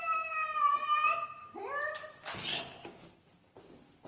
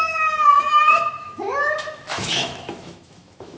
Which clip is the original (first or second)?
first